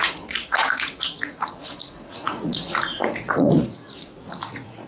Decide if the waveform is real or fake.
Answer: fake